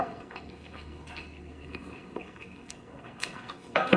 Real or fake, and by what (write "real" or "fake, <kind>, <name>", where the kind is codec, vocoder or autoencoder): fake, codec, SNAC